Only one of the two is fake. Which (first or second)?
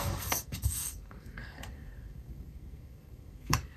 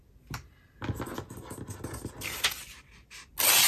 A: first